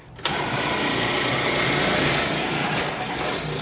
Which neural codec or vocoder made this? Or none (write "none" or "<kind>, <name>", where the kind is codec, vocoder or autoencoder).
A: none